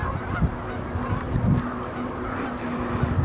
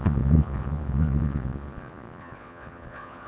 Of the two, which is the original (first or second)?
first